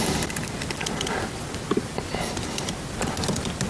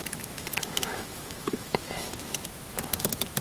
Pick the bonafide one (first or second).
first